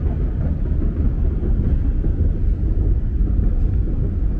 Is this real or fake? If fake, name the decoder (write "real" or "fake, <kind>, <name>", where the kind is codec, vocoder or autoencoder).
real